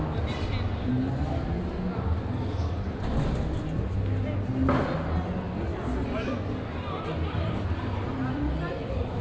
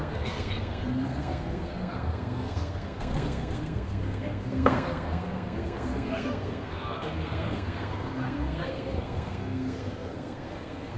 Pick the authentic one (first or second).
first